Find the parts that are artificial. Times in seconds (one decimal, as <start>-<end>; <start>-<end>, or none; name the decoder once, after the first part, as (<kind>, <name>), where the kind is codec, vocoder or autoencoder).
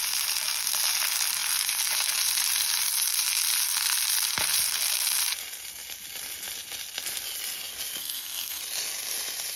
8.0-8.6 (codec, SNAC)